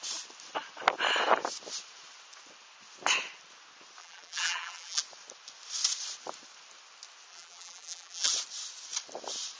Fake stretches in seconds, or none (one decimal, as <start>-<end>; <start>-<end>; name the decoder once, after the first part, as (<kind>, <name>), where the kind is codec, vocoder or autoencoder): 4.0-5.0 (vocoder, BigVGAN v2); 7.3-8.3